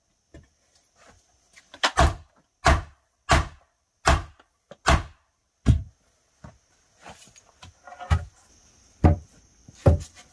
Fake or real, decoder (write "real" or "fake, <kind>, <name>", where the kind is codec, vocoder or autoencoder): real